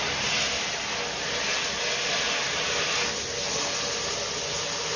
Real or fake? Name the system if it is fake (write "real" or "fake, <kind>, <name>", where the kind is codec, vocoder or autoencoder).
real